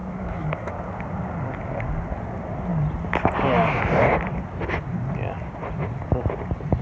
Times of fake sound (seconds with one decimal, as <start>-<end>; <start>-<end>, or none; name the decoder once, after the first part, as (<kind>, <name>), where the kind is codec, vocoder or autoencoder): 0.0-0.7 (autoencoder, DAC-VAE)